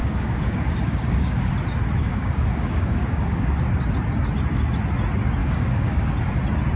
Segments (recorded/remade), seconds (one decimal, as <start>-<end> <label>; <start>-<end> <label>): 0.0-1.5 remade; 1.5-2.0 recorded; 2.0-3.6 remade; 3.6-5.4 recorded; 5.4-6.1 remade; 6.1-6.8 recorded